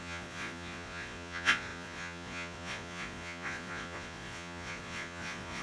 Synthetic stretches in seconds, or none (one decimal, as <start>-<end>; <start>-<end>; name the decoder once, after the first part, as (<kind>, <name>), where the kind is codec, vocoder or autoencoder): 0.0-5.6 (vocoder, Vocos)